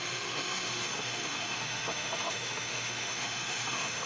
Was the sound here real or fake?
fake